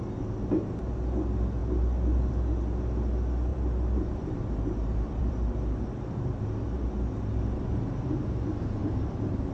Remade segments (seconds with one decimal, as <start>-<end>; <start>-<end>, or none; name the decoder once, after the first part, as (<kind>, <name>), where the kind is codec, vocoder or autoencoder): 3.5-6.4 (vocoder, BigVGAN v2); 8.8-9.5